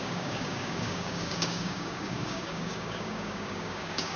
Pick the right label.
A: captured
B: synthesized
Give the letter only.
B